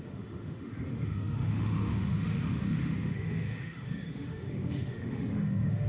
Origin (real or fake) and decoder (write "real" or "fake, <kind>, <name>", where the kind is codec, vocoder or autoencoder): fake, autoencoder, DAC-VAE